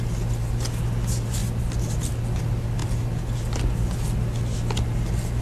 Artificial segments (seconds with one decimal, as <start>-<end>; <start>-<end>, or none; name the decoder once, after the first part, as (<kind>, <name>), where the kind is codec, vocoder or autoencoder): none